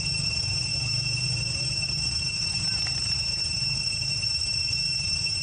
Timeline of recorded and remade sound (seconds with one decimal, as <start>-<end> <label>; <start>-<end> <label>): 0.0-4.4 remade; 4.4-4.9 recorded; 4.9-5.4 remade